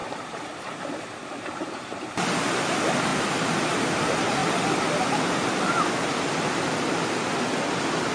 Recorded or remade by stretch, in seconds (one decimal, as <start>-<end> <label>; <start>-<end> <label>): 0.0-2.4 remade; 2.4-8.1 recorded